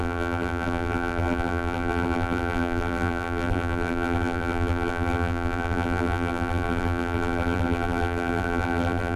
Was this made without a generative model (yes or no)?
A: no